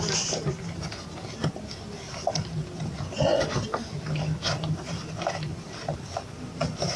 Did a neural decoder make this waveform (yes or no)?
no